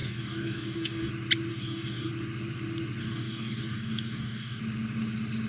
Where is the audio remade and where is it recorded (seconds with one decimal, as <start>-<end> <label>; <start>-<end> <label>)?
0.0-1.1 remade; 1.1-1.5 recorded; 1.5-2.1 remade; 2.1-3.0 recorded; 3.0-4.6 remade; 4.6-5.5 recorded